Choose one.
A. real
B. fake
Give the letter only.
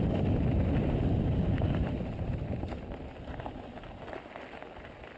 B